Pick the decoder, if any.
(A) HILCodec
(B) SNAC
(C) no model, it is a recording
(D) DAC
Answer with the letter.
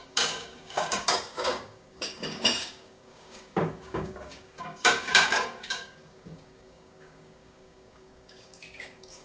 D